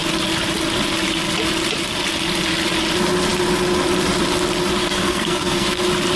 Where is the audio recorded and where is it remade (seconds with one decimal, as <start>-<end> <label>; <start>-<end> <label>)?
0.0-4.8 recorded; 4.8-5.8 remade; 5.8-6.2 recorded

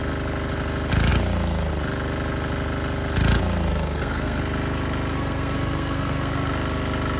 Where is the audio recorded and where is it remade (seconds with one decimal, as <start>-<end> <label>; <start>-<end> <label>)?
0.0-3.7 recorded; 3.7-4.4 remade; 4.4-5.1 recorded; 5.1-6.5 remade; 6.5-7.2 recorded

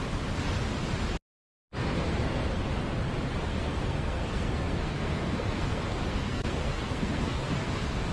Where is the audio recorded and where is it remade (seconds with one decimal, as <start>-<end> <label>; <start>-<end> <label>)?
0.0-1.7 recorded; 1.7-2.7 remade; 2.7-3.5 recorded; 3.5-8.1 remade

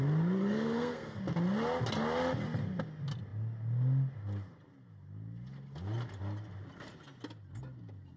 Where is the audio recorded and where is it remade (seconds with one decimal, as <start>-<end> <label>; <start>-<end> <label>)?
0.0-0.4 recorded; 0.4-1.2 remade; 1.2-8.2 recorded